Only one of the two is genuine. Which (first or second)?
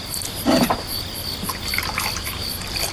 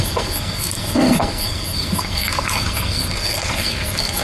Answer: first